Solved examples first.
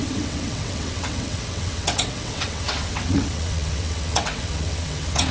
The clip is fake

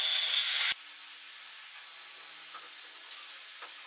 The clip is real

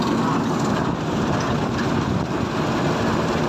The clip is real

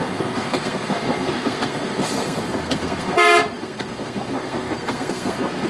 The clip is fake